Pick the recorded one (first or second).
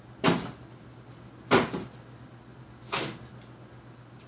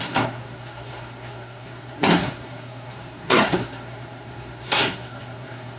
first